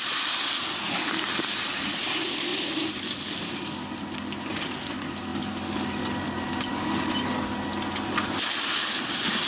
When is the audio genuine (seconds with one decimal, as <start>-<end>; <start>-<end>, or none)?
0.0-9.5